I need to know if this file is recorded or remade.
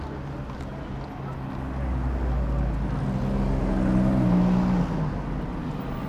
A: recorded